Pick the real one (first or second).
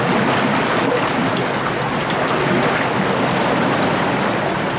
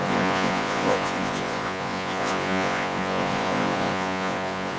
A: first